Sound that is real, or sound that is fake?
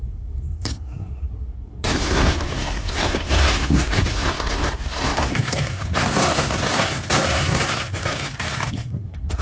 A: fake